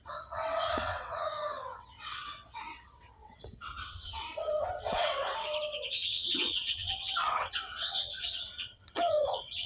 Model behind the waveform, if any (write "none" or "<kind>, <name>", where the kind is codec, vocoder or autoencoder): vocoder, WaveNeXt